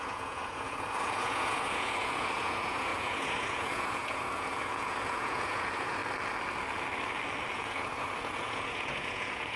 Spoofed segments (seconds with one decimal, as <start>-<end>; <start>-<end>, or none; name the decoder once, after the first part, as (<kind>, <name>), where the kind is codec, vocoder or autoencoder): 0.0-6.0 (vocoder, Vocos); 7.5-9.6